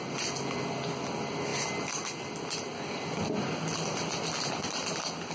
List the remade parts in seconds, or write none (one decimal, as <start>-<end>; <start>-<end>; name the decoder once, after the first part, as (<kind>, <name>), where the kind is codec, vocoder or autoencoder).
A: none